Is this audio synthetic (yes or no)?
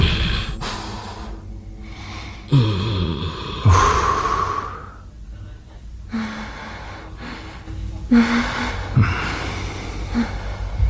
no